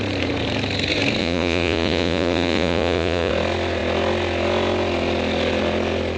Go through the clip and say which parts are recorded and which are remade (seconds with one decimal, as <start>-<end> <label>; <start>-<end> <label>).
0.0-1.2 recorded; 1.2-3.3 remade; 3.3-6.2 recorded